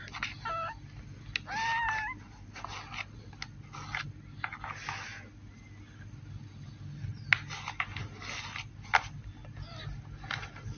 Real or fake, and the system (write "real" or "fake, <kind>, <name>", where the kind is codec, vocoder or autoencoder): real